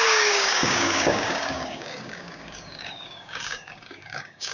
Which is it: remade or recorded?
remade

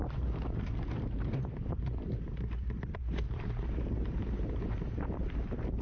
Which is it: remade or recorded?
remade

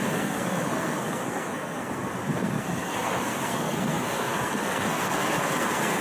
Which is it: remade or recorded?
remade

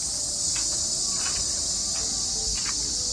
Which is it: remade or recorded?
recorded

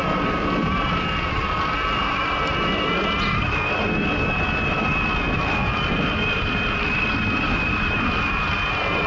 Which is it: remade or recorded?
recorded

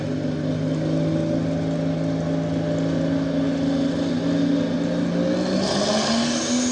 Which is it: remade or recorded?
recorded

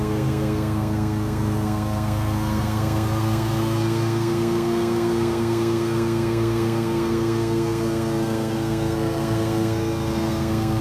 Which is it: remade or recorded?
remade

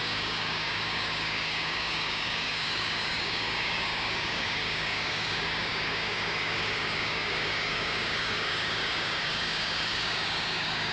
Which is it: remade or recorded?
remade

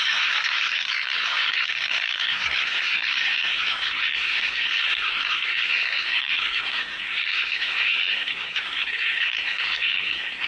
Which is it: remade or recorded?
remade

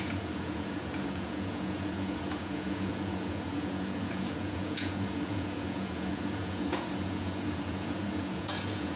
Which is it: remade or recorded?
remade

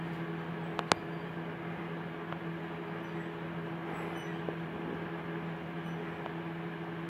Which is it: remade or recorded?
recorded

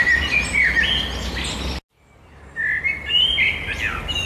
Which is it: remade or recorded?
recorded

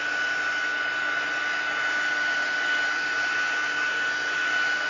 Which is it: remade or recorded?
recorded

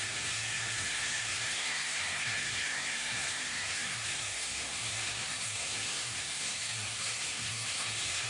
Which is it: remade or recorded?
remade